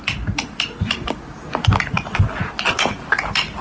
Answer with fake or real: real